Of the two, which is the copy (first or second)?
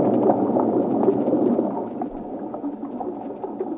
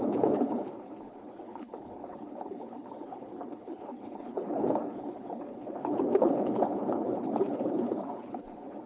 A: second